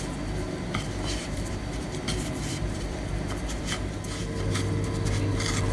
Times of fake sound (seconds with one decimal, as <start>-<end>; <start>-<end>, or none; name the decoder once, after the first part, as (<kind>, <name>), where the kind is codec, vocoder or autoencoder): 1.2-4.0 (vocoder, BigVGAN v2)